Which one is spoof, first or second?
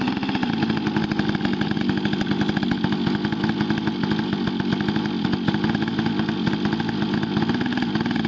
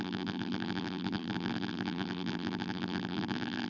second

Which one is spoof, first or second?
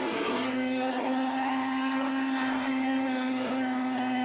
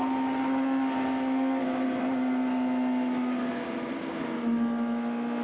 first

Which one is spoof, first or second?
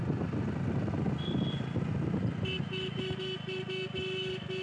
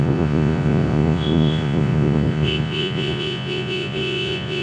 second